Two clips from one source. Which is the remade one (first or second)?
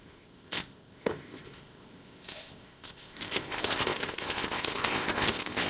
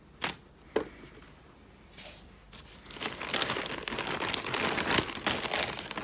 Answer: first